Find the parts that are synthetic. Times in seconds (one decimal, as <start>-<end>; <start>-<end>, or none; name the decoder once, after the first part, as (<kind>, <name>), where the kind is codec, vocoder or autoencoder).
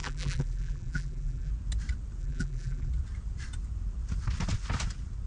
0.0-1.5 (vocoder, BigVGAN v2); 2.2-2.9